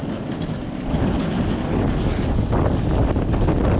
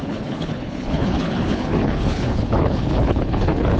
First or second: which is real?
first